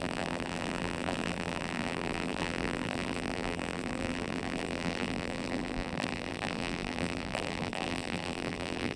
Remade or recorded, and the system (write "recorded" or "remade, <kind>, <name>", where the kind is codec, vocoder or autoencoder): remade, vocoder, BigVGAN v2